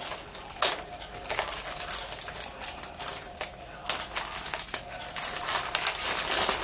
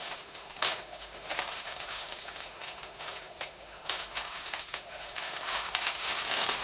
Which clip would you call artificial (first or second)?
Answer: second